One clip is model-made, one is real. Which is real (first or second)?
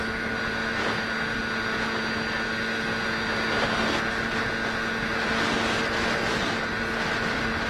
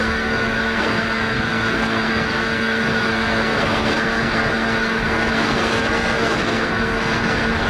first